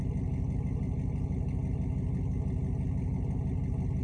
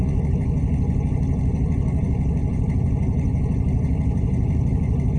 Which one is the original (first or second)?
first